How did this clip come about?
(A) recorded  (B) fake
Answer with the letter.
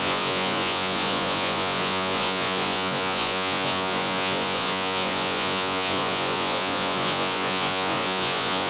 B